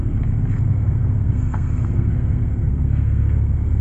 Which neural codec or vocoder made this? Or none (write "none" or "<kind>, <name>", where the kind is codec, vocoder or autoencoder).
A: codec, SNAC